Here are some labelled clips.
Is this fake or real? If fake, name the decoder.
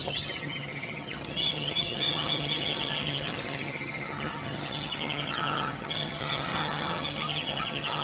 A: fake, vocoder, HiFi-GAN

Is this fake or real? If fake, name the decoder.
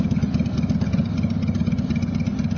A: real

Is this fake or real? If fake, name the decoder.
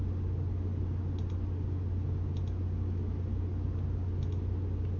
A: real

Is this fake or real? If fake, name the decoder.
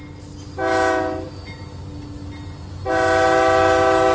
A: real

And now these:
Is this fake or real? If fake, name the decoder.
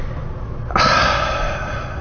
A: real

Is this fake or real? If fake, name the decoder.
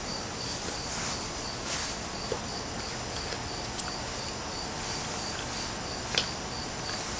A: real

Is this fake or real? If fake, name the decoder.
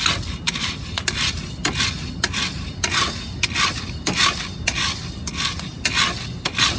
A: real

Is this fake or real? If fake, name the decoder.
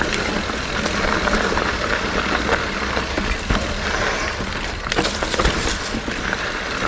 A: real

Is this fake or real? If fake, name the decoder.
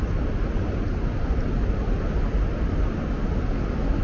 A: real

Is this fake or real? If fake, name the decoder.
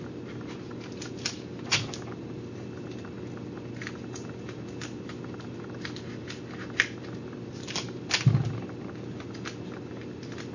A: real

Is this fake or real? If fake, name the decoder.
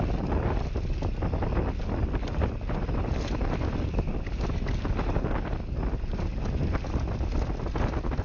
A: real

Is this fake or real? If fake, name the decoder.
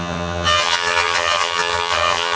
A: fake, vocoder, HiFi-GAN